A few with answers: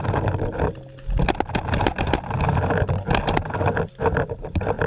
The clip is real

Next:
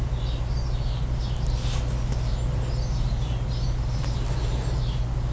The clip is real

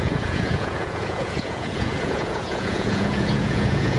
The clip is fake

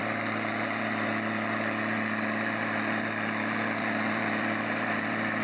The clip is fake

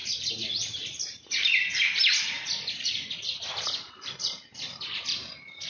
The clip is fake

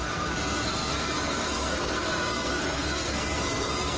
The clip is fake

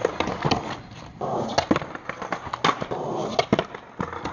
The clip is real